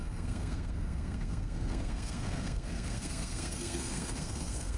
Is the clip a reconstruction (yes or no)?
yes